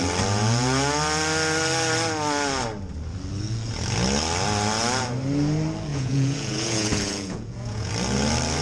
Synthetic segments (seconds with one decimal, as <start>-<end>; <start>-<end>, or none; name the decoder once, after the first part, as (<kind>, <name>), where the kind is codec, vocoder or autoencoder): 5.9-7.9 (vocoder, Vocos)